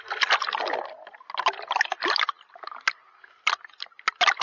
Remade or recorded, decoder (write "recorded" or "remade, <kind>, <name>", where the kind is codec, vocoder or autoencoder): recorded